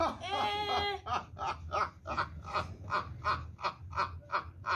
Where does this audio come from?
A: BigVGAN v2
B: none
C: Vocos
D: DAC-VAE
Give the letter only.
B